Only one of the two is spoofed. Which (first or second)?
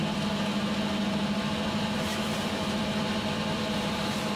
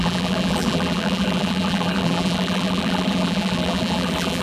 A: second